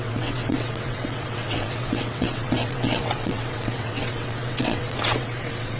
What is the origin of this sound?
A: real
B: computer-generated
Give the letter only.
B